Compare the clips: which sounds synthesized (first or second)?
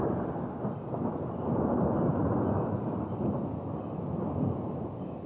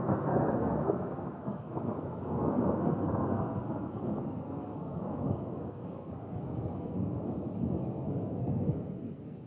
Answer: second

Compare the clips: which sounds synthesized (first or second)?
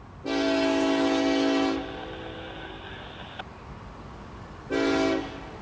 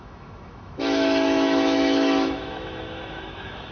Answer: second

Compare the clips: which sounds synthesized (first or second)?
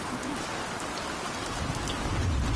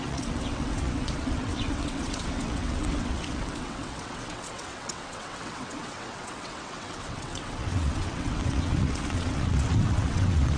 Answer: second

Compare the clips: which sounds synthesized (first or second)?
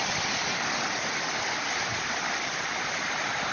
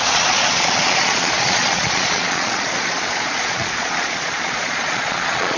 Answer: second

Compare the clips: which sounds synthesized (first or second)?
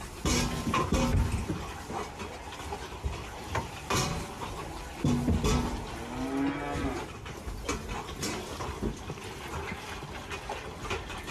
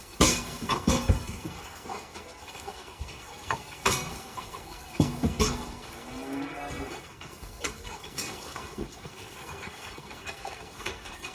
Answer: second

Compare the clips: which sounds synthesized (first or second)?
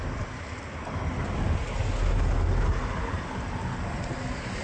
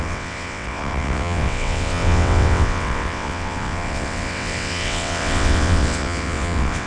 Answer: second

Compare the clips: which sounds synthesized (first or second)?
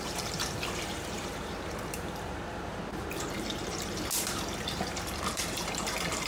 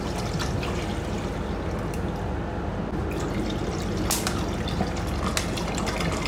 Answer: first